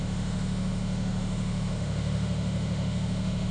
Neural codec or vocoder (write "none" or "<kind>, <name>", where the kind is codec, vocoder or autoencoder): autoencoder, DAC-VAE